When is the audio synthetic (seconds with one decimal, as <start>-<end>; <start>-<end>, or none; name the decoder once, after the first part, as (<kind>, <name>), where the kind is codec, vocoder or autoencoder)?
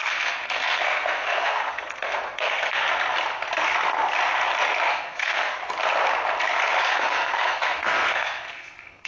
0.0-2.8 (codec, SNAC); 4.9-5.6; 6.8-9.1